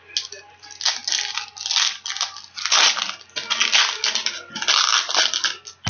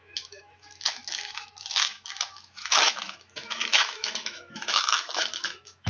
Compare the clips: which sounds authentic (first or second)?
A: first